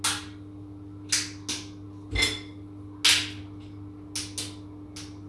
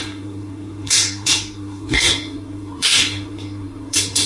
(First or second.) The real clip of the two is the first